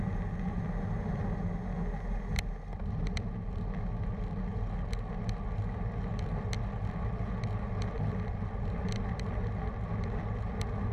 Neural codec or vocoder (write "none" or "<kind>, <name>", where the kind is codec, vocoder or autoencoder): none